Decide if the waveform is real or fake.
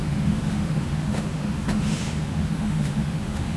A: fake